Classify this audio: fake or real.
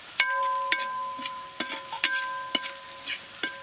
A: real